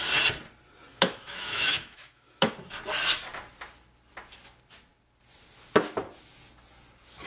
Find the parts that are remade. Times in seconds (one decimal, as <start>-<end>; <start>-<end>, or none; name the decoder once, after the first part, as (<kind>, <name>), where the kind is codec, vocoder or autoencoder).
0.9-2.5 (autoencoder, DAC-VAE)